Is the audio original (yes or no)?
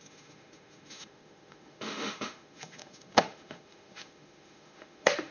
no